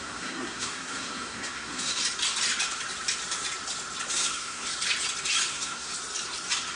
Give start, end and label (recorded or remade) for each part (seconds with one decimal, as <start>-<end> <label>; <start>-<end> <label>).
0.0-2.0 remade; 2.0-4.1 recorded; 4.1-4.7 remade; 4.7-5.5 recorded; 5.5-5.9 remade; 5.9-6.8 recorded